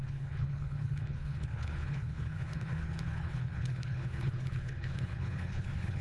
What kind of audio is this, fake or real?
fake